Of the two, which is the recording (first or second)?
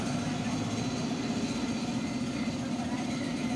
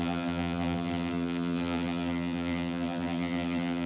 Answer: first